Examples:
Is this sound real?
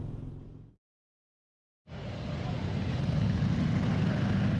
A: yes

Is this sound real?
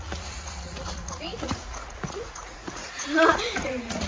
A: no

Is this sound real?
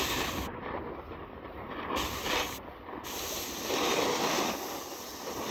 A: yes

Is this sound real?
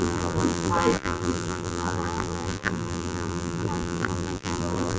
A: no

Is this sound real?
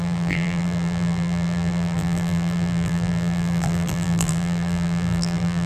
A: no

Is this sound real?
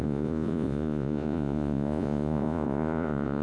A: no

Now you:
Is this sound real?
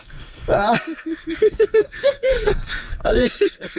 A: no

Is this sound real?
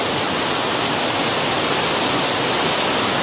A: yes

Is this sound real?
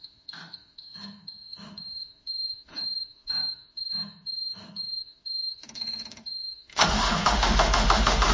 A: no